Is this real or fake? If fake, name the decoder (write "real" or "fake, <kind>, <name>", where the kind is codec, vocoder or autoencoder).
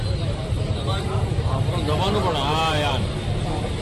real